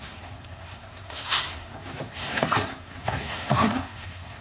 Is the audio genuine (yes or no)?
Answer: no